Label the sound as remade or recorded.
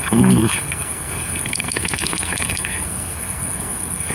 remade